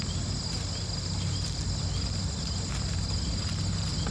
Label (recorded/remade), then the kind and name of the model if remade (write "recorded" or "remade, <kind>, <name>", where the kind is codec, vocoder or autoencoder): recorded